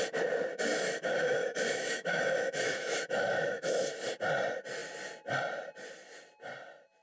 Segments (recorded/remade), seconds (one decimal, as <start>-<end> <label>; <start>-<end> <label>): 0.0-0.5 recorded; 0.5-4.1 remade; 4.1-7.0 recorded